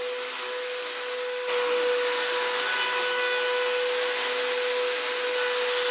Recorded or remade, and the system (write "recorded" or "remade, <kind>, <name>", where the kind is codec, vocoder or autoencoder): recorded